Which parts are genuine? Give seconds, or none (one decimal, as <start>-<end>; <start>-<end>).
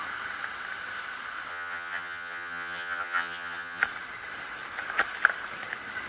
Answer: 0.0-1.5; 3.8-6.1